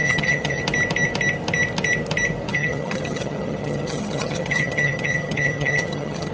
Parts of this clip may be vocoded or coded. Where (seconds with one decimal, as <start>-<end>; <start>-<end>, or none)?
0.0-0.6; 2.5-6.3